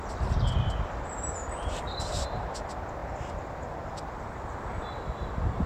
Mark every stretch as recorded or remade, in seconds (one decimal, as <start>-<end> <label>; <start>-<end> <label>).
0.0-5.7 recorded